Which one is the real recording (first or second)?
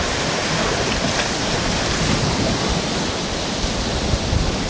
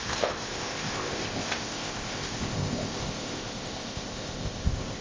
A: first